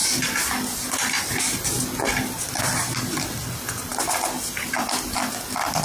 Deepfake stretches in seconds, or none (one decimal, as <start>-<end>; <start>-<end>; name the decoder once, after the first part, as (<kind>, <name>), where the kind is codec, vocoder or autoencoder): none